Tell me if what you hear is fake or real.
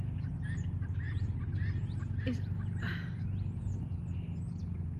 real